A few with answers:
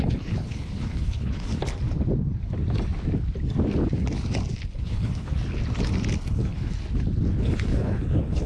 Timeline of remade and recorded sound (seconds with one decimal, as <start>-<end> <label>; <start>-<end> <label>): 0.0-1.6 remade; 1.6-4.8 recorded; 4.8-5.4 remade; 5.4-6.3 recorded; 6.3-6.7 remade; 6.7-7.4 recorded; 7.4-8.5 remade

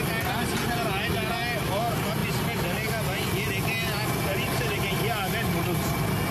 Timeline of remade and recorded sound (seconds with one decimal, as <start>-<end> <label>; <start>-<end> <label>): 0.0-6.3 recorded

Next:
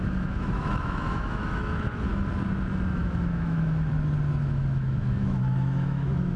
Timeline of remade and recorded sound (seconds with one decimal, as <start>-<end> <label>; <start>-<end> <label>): 0.0-2.1 remade; 2.1-3.0 recorded; 3.0-3.9 remade; 3.9-4.4 recorded; 4.4-6.4 remade

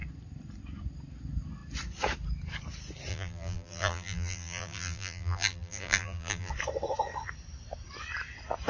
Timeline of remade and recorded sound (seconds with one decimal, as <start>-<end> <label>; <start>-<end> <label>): 0.0-3.1 recorded; 3.1-6.5 remade; 6.5-8.7 recorded

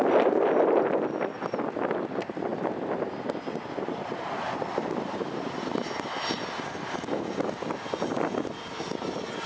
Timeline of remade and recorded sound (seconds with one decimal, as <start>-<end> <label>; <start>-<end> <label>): 0.0-9.5 recorded

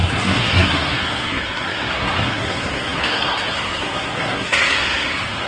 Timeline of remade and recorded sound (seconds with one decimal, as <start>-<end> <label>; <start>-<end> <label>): 0.0-5.5 remade

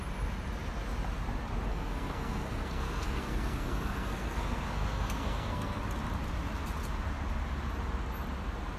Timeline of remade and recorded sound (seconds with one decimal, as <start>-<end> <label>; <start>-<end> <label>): 0.0-1.7 recorded; 1.7-5.8 remade; 5.8-8.8 recorded